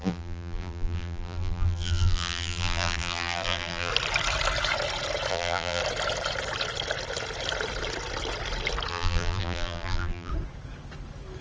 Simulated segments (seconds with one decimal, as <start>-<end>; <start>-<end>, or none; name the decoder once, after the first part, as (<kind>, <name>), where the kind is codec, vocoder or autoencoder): 0.0-3.9 (vocoder, BigVGAN v2); 5.3-5.8; 8.9-10.3